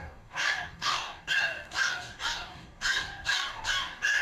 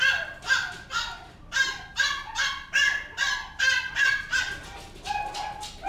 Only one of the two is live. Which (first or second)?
second